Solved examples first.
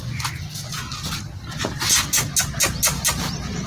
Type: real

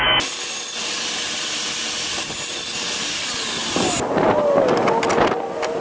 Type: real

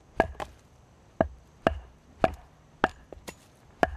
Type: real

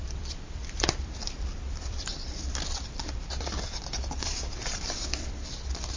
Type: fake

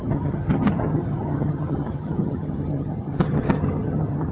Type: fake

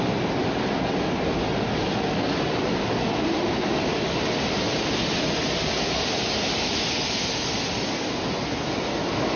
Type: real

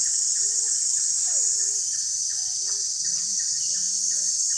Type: real